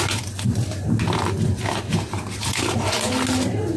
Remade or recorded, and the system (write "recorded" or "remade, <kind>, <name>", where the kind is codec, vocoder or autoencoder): recorded